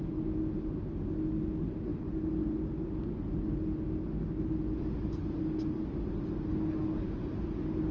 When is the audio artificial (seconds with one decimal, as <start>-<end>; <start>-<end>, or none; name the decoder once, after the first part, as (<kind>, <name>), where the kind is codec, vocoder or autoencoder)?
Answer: none